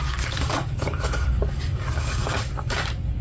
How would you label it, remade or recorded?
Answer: remade